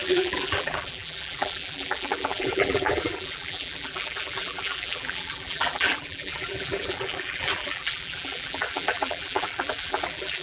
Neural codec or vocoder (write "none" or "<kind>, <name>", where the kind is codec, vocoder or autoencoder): vocoder, BigVGAN v2